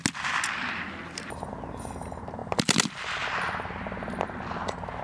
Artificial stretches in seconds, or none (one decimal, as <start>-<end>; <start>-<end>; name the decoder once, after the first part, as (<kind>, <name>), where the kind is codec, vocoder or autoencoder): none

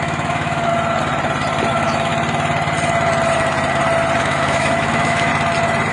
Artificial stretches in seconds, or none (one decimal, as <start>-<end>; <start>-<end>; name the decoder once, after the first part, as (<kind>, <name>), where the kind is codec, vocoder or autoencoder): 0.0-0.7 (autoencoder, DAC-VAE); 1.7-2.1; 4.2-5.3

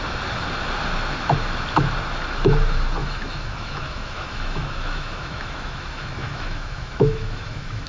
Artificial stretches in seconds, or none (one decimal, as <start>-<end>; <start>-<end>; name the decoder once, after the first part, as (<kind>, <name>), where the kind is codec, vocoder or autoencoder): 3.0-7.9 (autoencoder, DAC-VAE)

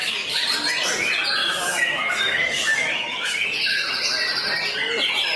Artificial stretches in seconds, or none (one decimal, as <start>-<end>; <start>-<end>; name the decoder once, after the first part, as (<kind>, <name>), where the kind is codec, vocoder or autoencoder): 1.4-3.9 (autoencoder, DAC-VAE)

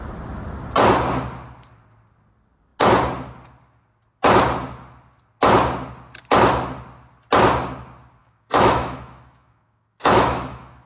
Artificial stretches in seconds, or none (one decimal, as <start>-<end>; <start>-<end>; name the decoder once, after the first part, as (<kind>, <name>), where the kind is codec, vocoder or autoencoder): 8.2-10.9 (autoencoder, DAC-VAE)